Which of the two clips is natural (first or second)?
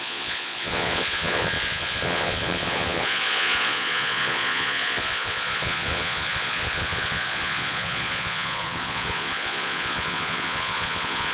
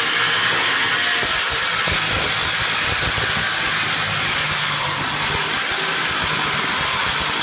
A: second